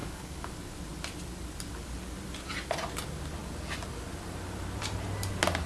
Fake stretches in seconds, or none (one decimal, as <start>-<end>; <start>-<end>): 0.0-0.5